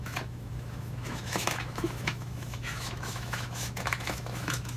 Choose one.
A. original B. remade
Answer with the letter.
B